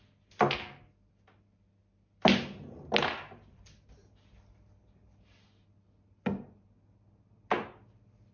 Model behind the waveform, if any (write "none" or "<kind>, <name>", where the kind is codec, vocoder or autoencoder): none